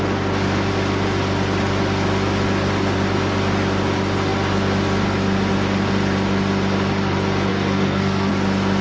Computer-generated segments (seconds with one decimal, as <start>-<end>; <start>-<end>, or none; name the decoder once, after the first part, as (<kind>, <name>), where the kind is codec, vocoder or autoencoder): 7.5-8.3 (codec, SNAC)